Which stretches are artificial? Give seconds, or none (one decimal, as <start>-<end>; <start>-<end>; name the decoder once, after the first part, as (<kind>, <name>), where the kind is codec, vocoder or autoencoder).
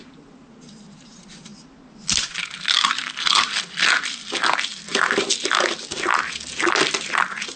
none